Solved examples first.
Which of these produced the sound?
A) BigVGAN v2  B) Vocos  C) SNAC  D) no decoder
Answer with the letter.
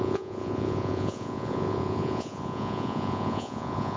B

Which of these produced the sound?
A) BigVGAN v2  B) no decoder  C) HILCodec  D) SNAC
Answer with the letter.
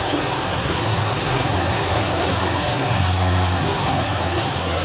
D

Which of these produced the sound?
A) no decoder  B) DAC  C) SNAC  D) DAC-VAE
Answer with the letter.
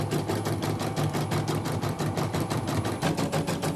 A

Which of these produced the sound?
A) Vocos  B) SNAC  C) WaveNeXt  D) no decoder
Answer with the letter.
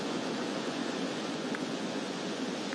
A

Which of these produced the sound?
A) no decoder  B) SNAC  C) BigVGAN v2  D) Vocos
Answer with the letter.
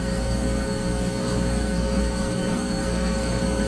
B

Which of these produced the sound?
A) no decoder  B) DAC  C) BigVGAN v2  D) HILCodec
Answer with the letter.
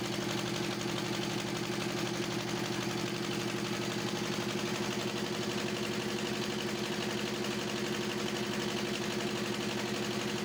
A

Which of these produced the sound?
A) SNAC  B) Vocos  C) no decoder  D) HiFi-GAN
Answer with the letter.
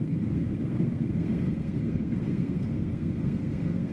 A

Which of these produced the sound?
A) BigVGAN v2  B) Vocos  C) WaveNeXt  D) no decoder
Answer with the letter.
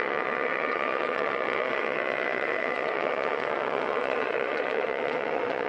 C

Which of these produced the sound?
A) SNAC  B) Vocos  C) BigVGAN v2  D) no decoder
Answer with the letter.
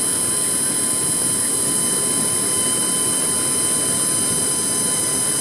C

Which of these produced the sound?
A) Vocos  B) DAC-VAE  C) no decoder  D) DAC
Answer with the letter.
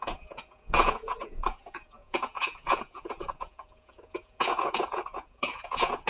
A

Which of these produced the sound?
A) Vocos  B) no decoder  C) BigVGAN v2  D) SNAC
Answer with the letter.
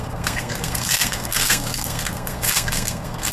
D